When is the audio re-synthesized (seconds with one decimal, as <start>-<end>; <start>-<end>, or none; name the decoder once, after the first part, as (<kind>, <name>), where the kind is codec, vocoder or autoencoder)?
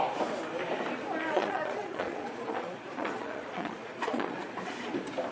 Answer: 1.3-4.5 (vocoder, Vocos)